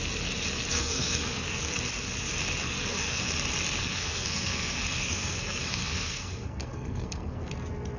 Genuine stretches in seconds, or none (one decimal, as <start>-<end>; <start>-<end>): 0.0-0.7; 1.7-2.6; 3.3-3.8; 7.5-8.0